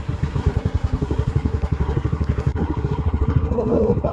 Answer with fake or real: fake